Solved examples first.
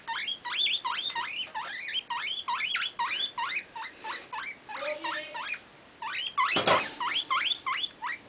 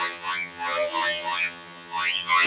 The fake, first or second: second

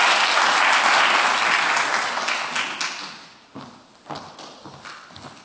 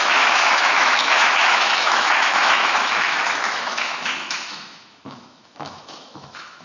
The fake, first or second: second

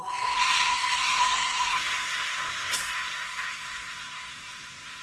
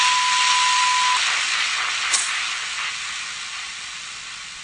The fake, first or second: first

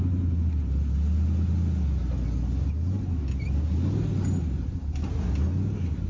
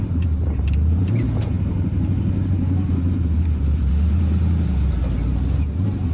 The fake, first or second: second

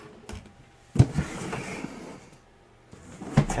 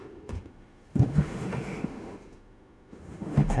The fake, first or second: second